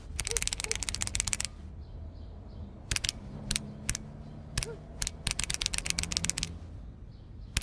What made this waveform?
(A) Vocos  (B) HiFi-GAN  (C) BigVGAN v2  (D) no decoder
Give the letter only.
D